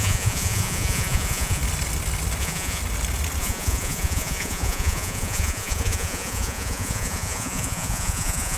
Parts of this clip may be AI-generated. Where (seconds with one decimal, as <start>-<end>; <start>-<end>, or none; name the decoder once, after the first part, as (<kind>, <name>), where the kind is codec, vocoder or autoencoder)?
0.0-1.6 (vocoder, Vocos); 2.4-2.8; 3.4-8.6